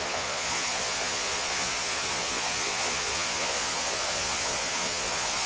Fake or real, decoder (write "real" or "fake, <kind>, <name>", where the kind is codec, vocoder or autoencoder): fake, vocoder, Vocos